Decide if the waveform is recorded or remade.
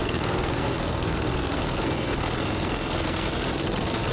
remade